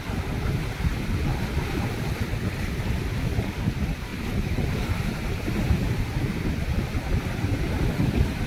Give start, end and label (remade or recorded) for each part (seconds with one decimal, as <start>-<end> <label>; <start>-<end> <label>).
0.0-4.1 remade; 4.1-4.7 recorded; 4.7-8.5 remade